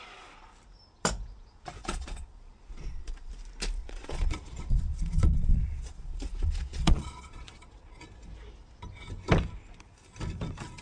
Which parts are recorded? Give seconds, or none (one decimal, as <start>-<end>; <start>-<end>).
0.0-1.8; 3.3-3.8; 8.0-10.8